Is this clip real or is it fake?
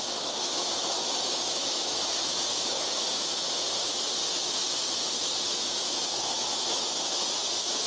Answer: fake